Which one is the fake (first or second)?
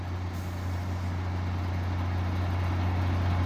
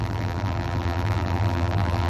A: second